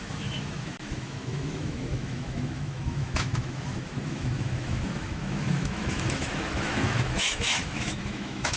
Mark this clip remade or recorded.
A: remade